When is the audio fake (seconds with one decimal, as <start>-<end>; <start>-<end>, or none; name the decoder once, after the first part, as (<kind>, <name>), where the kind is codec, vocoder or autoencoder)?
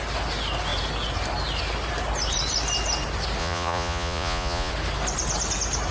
3.4-4.7 (vocoder, Vocos)